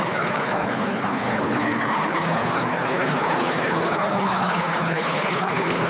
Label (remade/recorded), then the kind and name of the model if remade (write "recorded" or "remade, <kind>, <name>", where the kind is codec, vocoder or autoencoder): remade, codec, HILCodec